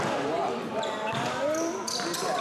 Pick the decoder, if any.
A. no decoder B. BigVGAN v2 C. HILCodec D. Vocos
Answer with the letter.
B